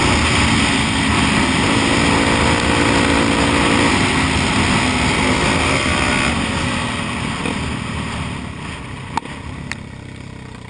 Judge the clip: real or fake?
real